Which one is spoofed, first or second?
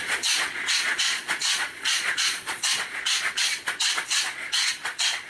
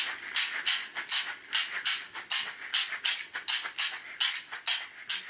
first